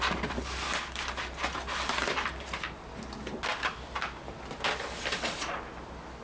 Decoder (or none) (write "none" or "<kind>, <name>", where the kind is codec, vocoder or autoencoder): none